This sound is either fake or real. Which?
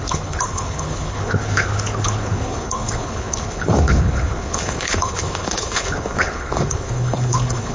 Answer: fake